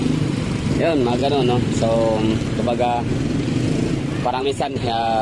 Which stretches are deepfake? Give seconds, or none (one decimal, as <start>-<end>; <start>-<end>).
0.0-1.2; 4.3-5.2

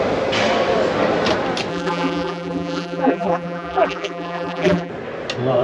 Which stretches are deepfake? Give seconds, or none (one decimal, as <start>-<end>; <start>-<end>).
1.7-4.9

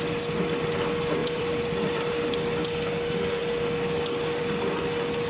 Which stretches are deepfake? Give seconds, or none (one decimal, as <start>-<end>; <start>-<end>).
1.2-2.2

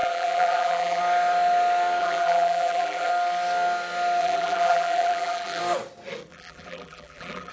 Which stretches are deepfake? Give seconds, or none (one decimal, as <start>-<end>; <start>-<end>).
0.0-1.0; 2.0-3.1; 4.2-5.6; 6.3-7.5

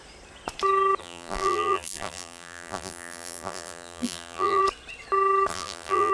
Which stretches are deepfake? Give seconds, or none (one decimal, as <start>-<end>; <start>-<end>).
1.0-4.6; 5.5-6.1

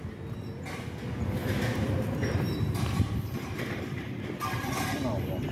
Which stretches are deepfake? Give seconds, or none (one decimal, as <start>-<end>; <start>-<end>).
1.4-4.2

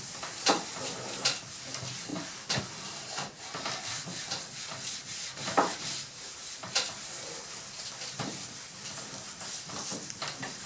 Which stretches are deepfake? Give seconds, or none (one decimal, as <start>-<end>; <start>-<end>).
0.0-2.1; 2.6-9.9

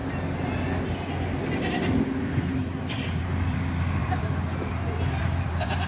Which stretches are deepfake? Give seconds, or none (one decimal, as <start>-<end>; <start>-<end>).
1.7-5.9